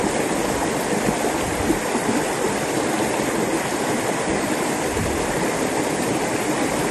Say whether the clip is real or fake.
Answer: real